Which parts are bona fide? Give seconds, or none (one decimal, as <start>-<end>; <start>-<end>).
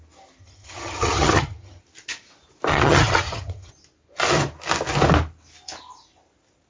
0.0-0.4; 1.8-2.7; 3.7-6.7